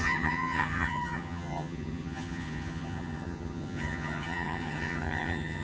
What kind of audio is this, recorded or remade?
remade